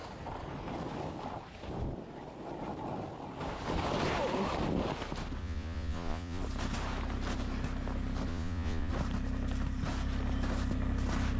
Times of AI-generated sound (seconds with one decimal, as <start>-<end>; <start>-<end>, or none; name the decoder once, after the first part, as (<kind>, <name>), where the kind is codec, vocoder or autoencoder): 5.4-6.4 (vocoder, Vocos); 8.3-8.9